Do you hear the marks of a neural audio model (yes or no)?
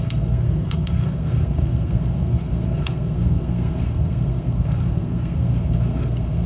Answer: yes